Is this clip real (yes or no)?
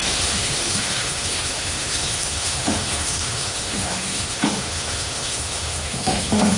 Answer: no